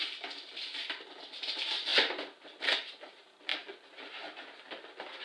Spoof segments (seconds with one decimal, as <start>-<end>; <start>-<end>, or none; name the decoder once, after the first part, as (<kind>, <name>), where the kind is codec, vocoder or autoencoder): none